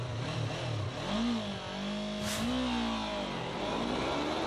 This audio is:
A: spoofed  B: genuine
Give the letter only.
B